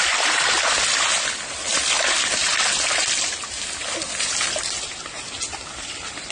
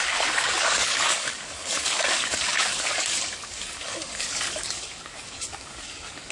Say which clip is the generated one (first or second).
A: second